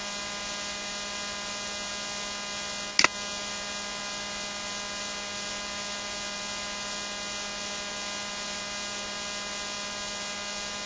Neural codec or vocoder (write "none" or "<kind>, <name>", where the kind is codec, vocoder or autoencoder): none